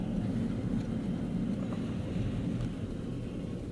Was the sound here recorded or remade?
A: recorded